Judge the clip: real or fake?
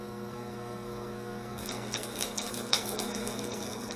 fake